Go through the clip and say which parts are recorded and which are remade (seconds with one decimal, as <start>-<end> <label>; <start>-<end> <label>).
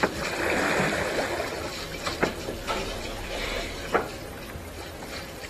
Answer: 0.0-1.7 remade; 1.7-2.7 recorded; 2.7-5.5 remade